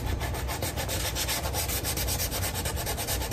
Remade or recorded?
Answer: recorded